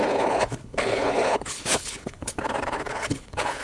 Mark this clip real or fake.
fake